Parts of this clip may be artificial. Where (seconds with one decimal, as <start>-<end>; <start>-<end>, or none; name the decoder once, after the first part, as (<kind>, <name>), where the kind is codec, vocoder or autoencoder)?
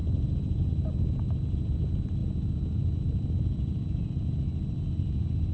none